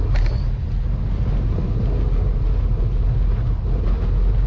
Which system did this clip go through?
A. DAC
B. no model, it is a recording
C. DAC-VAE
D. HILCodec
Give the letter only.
B